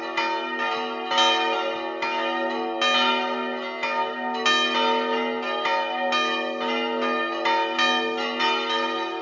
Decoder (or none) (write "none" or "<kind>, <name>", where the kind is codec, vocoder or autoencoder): none